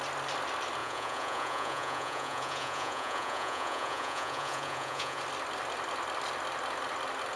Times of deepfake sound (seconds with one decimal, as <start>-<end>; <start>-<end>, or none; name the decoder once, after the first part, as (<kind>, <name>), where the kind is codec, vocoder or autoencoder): 0.8-5.2 (vocoder, Vocos)